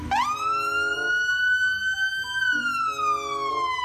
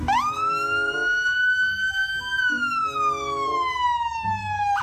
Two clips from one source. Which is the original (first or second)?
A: first